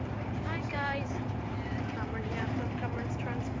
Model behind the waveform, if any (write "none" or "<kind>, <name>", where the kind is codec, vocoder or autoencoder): vocoder, BigVGAN v2